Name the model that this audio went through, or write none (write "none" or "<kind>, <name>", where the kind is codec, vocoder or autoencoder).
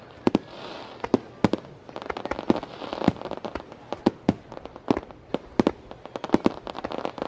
none